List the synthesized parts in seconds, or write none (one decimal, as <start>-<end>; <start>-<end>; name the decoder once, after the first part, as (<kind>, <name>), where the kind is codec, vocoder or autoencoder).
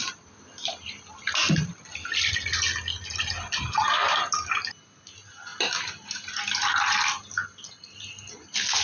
none